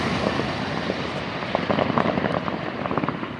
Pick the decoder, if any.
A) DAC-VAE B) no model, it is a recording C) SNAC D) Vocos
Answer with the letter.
B